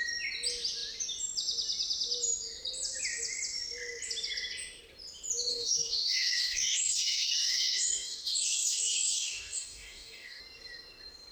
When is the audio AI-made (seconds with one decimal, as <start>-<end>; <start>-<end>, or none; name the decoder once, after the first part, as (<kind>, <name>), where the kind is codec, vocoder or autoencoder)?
5.5-10.4 (codec, DAC)